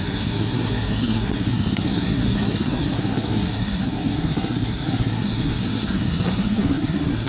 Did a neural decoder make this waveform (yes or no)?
yes